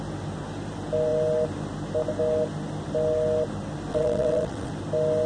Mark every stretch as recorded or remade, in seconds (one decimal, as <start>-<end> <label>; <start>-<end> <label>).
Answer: 0.0-3.9 recorded; 3.9-4.7 remade; 4.7-5.3 recorded